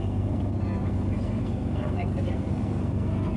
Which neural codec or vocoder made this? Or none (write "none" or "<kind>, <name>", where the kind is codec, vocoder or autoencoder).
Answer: codec, SNAC